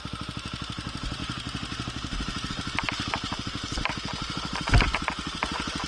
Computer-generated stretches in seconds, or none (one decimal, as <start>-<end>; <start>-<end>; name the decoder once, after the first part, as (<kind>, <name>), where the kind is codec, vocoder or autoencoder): none